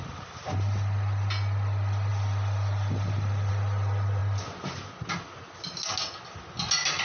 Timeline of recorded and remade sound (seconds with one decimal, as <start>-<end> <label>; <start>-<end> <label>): 0.0-7.0 recorded